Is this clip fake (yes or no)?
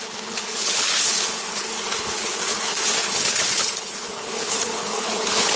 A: yes